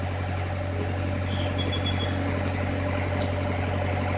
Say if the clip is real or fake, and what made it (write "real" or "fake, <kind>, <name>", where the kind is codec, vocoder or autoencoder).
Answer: real